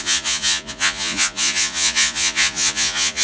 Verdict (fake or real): fake